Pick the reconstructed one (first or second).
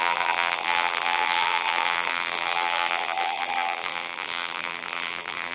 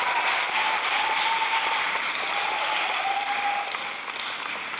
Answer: first